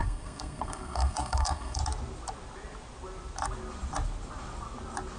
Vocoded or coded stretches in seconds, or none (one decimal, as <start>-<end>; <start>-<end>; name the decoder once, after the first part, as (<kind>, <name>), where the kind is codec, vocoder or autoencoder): 0.0-1.8 (codec, SNAC)